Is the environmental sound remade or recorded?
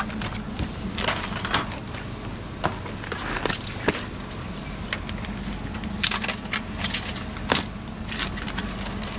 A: recorded